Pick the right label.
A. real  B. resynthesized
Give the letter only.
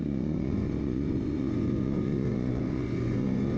B